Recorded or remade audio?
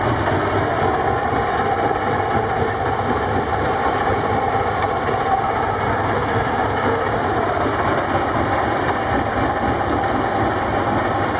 remade